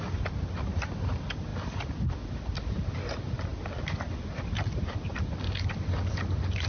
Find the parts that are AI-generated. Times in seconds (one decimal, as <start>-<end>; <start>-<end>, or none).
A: none